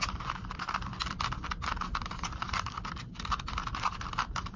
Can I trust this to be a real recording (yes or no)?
no